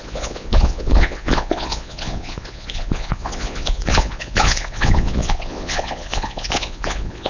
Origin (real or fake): fake